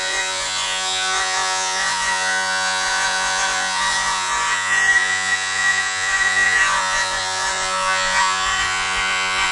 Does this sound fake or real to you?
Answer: fake